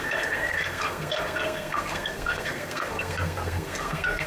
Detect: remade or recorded remade